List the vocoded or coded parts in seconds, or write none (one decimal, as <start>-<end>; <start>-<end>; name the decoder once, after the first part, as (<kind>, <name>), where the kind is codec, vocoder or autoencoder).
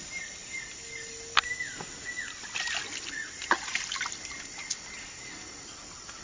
none